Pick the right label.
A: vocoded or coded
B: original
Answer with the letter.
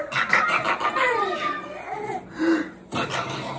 B